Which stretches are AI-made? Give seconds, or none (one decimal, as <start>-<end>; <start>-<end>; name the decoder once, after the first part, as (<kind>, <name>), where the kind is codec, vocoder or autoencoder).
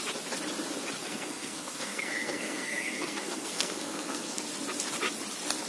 1.0-4.4 (codec, SNAC)